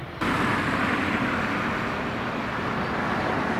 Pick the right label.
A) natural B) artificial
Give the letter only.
A